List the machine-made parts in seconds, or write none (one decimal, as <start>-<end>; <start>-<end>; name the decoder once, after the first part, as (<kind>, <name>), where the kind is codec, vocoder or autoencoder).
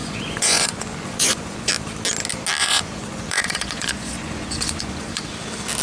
0.0-1.7 (vocoder, Vocos); 2.6-5.3